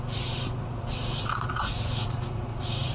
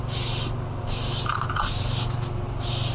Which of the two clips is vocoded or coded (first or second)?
first